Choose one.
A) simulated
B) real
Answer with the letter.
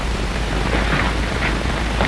A